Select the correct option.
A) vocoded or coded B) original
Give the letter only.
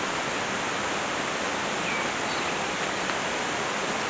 B